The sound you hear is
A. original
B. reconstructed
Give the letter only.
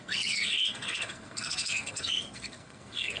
B